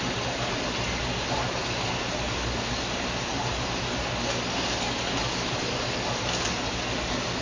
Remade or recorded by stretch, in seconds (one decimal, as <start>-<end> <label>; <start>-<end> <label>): 0.0-7.4 recorded